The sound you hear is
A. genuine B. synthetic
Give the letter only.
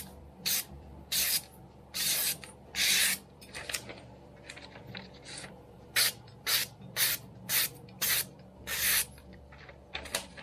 B